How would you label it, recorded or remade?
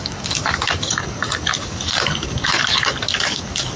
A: remade